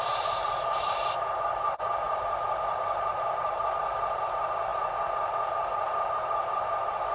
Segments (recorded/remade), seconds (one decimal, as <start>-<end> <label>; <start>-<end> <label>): 0.0-4.7 remade; 4.7-6.2 recorded; 6.2-7.1 remade